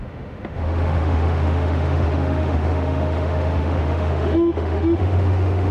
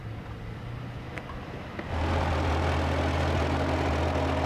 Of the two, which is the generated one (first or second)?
first